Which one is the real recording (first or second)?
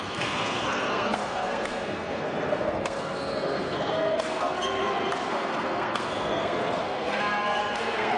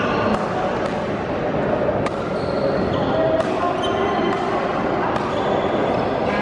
second